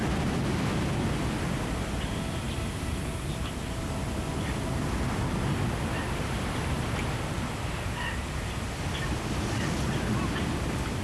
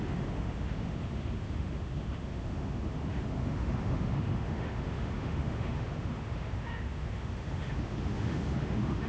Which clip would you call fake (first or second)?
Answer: second